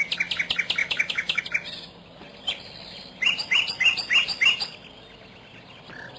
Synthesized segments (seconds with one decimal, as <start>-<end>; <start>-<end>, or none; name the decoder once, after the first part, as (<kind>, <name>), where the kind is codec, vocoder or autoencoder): 0.8-1.4 (autoencoder, DAC-VAE)